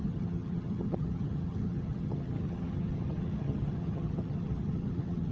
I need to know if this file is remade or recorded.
remade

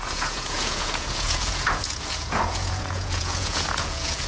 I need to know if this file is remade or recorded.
remade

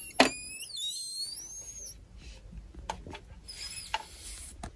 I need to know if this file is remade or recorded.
recorded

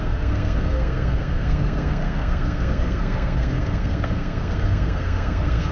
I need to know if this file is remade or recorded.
remade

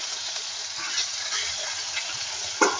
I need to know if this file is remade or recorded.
remade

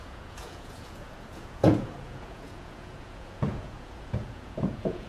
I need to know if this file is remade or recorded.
remade